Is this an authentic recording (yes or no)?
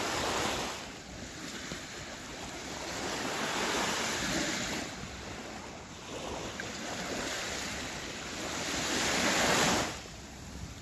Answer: yes